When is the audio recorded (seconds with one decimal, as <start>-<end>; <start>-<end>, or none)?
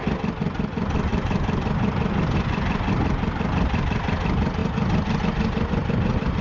0.0-6.4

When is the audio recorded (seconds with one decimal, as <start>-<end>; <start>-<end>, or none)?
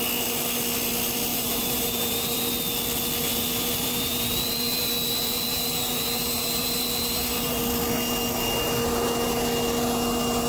0.0-1.3; 2.5-3.3; 7.6-10.5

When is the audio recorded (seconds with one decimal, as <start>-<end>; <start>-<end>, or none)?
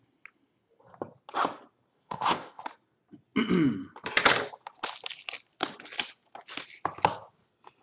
0.0-1.9; 2.6-7.8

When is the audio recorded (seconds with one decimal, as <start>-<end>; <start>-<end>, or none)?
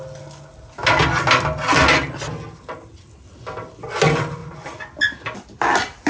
0.0-6.1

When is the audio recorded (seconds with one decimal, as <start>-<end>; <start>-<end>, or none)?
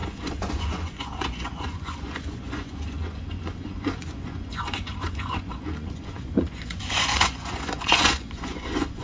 none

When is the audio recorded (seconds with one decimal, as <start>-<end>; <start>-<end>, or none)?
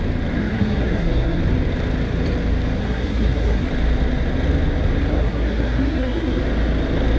0.0-0.4; 1.4-2.8; 3.7-5.1; 6.4-7.2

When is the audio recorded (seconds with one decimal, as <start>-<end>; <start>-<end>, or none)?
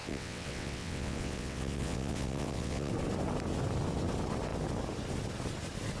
2.9-6.0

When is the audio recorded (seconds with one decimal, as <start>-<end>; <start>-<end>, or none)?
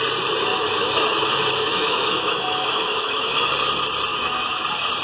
0.0-0.5; 3.5-4.1; 4.6-5.0